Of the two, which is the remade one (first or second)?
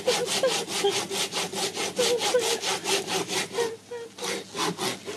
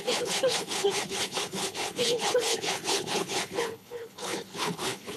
second